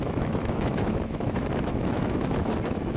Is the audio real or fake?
fake